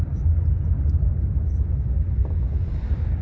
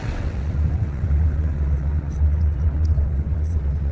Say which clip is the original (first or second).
first